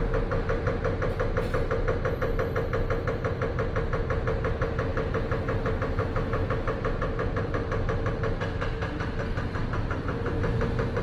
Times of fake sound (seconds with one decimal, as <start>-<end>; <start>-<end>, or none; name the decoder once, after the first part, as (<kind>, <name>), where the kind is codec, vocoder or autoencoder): 9.6-10.3 (vocoder, BigVGAN v2)